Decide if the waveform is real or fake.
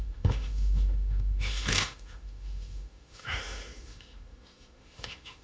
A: fake